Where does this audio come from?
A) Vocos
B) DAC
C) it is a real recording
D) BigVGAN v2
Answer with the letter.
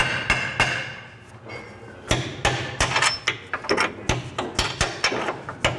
C